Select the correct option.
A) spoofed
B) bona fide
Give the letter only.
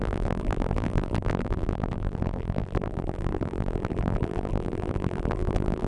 A